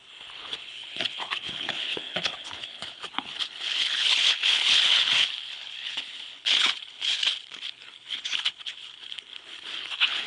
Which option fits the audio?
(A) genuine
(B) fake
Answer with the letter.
B